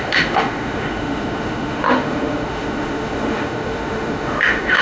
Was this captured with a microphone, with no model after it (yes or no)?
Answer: no